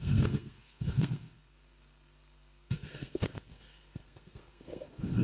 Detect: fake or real fake